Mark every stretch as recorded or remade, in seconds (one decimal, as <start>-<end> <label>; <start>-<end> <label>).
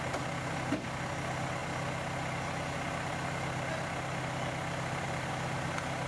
0.0-6.1 recorded